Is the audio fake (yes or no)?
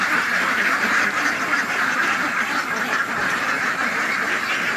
yes